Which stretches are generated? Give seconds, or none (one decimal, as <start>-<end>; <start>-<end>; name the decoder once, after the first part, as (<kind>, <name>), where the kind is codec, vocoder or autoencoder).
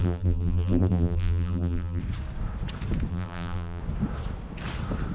0.0-2.0 (vocoder, BigVGAN v2); 3.1-3.8